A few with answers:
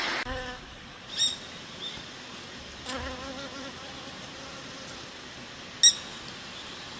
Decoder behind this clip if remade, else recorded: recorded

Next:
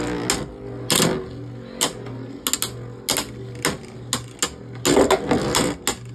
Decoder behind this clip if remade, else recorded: recorded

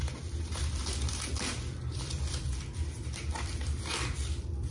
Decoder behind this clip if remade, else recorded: remade, vocoder, BigVGAN v2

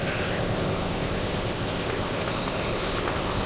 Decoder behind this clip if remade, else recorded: remade, codec, ZipCodec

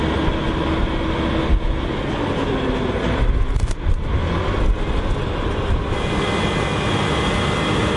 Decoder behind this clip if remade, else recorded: recorded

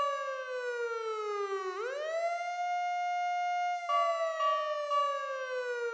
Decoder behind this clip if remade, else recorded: recorded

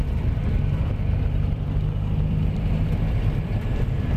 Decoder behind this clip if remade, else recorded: remade, vocoder, BigVGAN v2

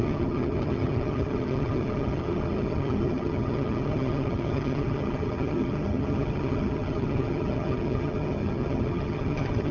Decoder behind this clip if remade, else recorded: remade, vocoder, HiFi-GAN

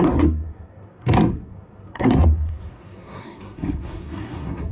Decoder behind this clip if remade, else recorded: remade, codec, SNAC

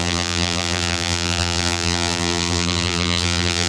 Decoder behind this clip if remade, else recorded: remade, vocoder, BigVGAN v2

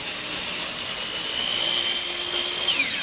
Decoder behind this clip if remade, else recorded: recorded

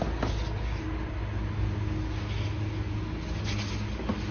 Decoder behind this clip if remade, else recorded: recorded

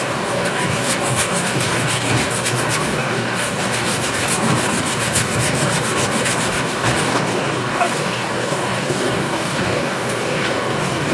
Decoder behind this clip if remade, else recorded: remade, codec, DAC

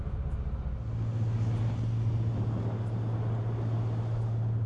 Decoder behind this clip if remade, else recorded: recorded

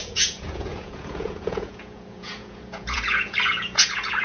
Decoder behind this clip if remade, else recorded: remade, vocoder, Vocos